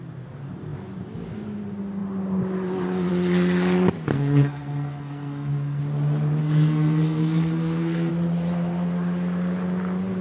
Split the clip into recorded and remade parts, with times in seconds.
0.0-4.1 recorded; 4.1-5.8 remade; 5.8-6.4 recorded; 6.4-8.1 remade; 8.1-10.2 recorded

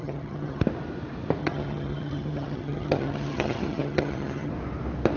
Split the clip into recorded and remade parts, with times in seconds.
0.0-0.6 remade; 0.6-1.4 recorded; 1.4-4.5 remade; 4.5-5.2 recorded

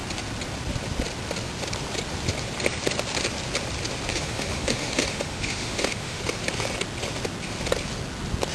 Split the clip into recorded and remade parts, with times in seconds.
0.0-4.1 recorded; 4.1-6.2 remade; 6.2-8.5 recorded

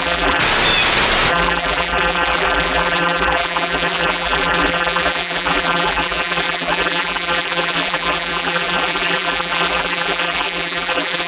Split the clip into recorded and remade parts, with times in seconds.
0.0-0.4 remade; 0.4-1.3 recorded; 1.3-11.3 remade